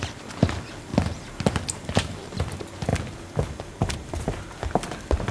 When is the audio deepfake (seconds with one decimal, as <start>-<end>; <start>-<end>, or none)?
none